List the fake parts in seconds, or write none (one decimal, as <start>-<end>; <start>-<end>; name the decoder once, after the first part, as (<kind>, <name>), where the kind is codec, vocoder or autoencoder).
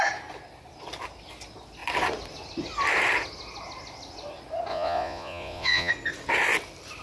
4.7-5.9 (vocoder, Vocos)